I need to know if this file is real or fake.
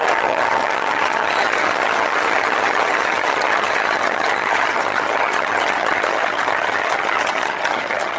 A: fake